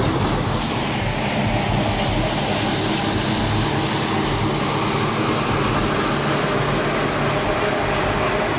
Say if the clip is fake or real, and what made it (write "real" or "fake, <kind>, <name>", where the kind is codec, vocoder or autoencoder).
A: real